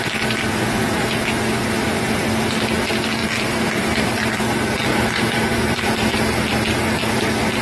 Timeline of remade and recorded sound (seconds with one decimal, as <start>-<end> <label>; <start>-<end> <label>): 0.0-4.9 recorded; 4.9-7.1 remade; 7.1-7.6 recorded